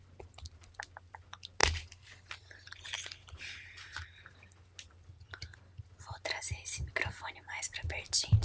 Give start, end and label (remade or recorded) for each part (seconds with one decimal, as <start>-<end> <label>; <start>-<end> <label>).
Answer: 0.0-8.4 recorded